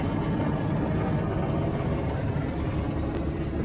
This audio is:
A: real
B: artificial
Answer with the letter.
A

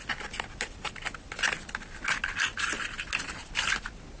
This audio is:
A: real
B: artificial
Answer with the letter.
A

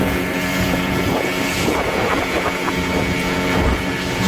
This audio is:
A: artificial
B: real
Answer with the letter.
A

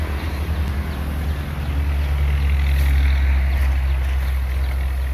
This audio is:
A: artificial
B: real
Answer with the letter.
B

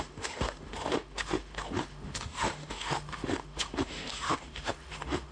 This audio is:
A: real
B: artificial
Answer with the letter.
B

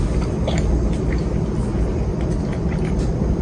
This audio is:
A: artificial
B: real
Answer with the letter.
B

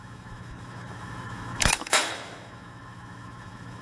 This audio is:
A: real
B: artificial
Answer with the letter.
B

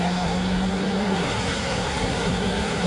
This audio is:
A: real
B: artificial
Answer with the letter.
B